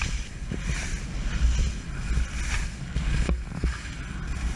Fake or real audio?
real